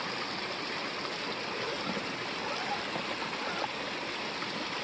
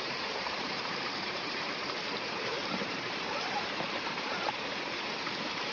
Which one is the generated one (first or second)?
second